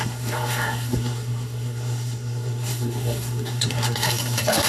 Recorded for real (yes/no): no